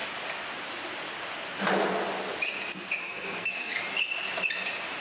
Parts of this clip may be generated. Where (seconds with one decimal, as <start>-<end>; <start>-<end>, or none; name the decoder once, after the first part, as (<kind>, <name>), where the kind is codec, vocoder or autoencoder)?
3.0-3.8 (codec, SNAC)